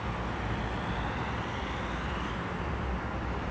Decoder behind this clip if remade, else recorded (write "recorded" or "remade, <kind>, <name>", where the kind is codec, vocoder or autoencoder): recorded